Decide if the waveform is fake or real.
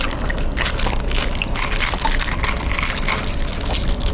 real